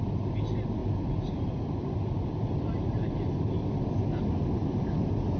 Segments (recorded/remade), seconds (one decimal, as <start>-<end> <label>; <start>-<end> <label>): 0.0-5.4 recorded